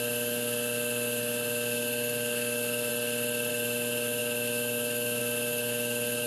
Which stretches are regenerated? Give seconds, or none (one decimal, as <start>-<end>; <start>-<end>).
0.0-2.9; 3.5-6.3